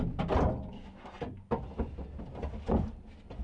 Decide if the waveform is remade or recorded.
recorded